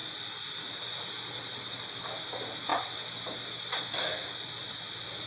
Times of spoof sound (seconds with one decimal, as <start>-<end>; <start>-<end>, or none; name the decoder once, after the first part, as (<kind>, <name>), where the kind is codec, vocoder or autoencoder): none